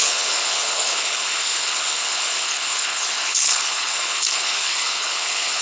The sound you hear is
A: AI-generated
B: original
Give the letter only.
A